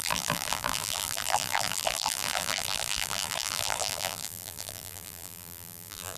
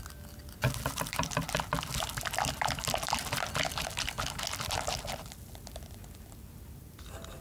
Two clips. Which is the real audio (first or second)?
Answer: second